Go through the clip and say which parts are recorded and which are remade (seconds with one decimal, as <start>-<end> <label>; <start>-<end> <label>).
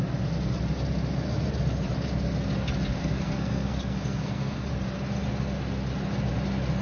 0.0-3.0 recorded; 3.0-4.7 remade; 4.7-6.8 recorded